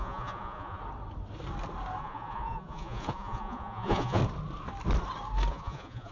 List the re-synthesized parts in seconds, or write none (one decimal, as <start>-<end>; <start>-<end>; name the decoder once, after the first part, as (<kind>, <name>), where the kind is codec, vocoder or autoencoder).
0.0-0.8 (vocoder, Vocos); 2.0-4.2; 5.5-6.1